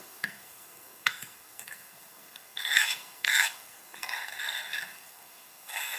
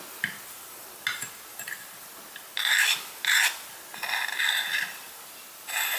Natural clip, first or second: second